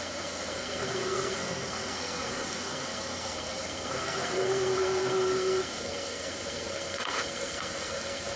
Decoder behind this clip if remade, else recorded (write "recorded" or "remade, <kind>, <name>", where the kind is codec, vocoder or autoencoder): remade, codec, SNAC